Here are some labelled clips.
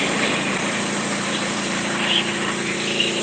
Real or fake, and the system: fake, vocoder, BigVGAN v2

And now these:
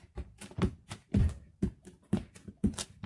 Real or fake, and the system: fake, vocoder, BigVGAN v2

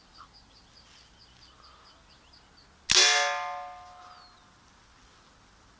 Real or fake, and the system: real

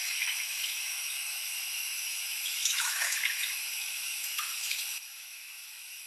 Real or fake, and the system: fake, autoencoder, DAC-VAE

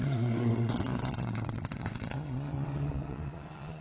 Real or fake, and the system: fake, vocoder, WaveNeXt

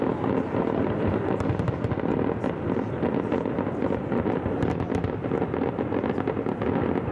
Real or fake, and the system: real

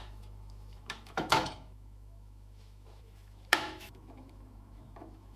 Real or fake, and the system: fake, autoencoder, DAC-VAE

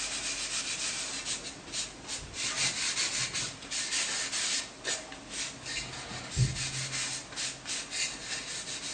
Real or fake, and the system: real